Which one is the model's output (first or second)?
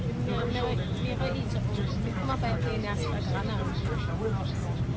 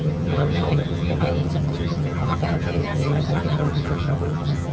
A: second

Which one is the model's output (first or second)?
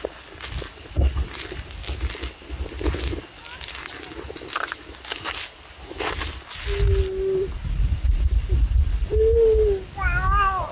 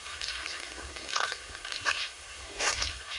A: second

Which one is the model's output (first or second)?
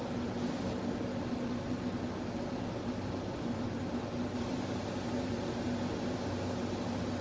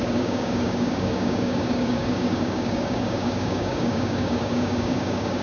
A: second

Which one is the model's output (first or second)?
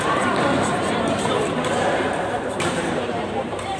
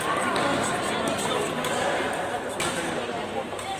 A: first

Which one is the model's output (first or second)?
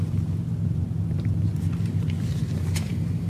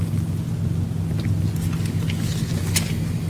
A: first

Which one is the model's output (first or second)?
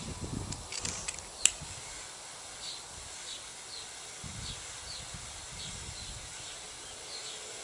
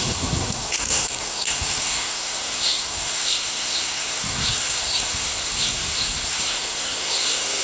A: second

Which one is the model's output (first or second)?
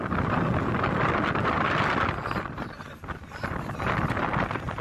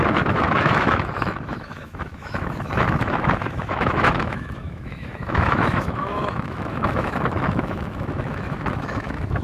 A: second